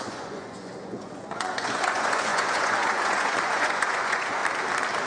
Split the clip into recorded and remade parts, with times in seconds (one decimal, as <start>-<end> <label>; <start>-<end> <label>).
0.0-4.4 remade; 4.4-5.1 recorded